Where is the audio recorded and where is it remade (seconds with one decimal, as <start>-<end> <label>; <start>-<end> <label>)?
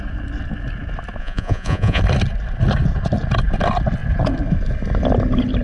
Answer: 0.0-1.2 recorded; 1.2-2.0 remade; 2.0-5.6 recorded